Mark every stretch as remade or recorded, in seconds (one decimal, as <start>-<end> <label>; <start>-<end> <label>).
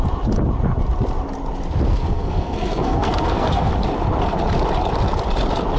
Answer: 0.0-1.9 recorded; 1.9-3.7 remade; 3.7-5.8 recorded